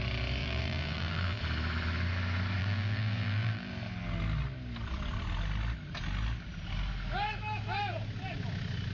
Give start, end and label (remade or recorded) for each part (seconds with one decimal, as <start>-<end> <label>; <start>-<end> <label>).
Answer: 0.0-0.4 recorded; 0.4-1.4 remade; 1.4-2.6 recorded; 2.6-3.7 remade; 3.7-8.9 recorded